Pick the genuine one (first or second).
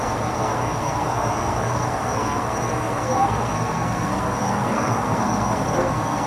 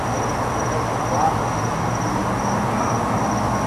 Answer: second